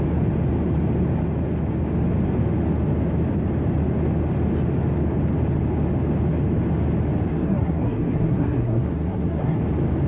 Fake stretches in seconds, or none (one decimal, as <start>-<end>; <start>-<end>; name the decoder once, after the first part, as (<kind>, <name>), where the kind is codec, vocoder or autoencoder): 7.3-9.6 (codec, SNAC)